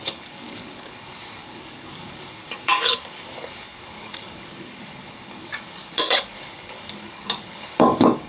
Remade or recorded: remade